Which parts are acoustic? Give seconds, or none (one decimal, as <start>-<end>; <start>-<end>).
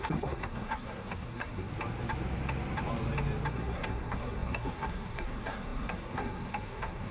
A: 1.7-3.5